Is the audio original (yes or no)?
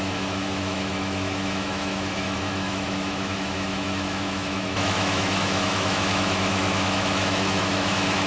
no